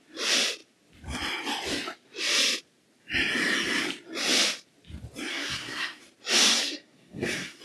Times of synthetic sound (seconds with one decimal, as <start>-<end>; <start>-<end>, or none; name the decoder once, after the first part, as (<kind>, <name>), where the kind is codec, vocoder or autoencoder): 5.3-6.0 (codec, SNAC); 6.5-7.6